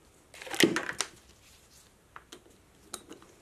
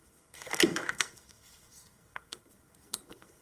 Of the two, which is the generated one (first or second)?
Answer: second